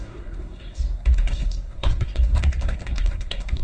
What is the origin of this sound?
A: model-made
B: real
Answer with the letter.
A